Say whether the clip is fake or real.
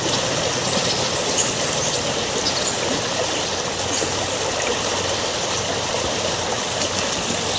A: real